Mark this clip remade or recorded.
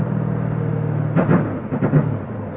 recorded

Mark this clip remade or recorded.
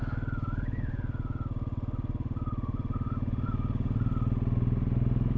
recorded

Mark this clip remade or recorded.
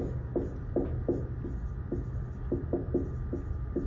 recorded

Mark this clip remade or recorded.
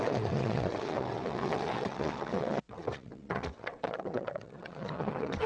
remade